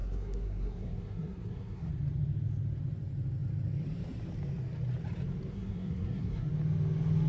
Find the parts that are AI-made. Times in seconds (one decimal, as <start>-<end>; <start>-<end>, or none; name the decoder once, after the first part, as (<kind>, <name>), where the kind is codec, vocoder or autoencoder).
0.0-1.9 (codec, SNAC); 5.5-6.5